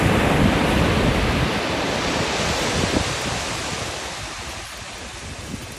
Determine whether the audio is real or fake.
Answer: real